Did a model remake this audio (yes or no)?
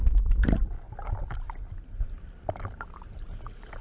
no